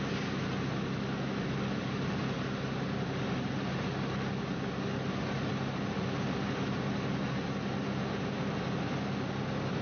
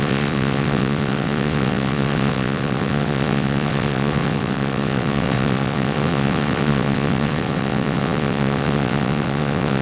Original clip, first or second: first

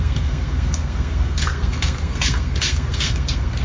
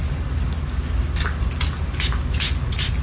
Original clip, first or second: second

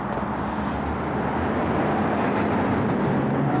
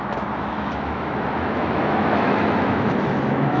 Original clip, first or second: first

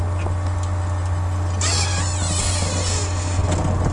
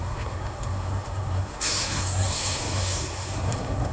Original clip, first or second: first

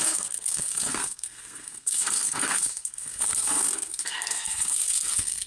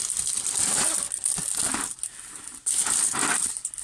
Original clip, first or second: second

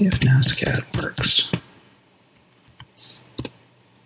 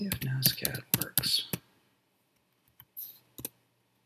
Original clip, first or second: second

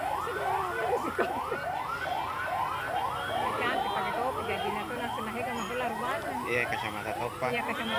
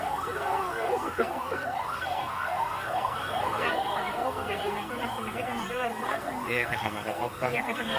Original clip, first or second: first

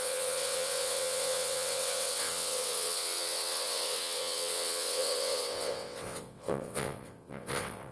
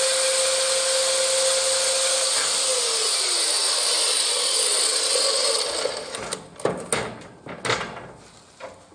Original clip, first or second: second